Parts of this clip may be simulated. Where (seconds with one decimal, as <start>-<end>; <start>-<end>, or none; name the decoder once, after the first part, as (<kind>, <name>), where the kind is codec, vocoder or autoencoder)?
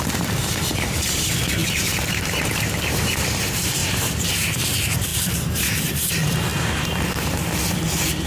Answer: 0.0-8.3 (vocoder, BigVGAN v2)